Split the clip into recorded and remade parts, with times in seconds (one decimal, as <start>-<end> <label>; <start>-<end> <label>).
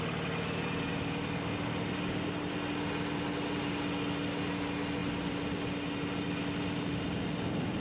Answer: 0.0-7.8 recorded